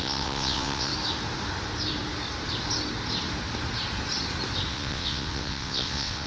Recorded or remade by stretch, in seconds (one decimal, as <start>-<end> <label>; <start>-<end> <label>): 0.0-0.9 remade; 0.9-4.7 recorded; 4.7-6.3 remade